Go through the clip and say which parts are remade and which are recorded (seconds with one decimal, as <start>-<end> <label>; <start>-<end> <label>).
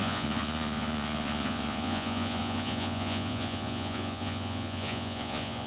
0.0-5.7 remade